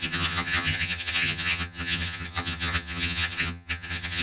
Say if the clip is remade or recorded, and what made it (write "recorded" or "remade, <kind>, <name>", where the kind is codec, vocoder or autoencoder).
remade, vocoder, HiFi-GAN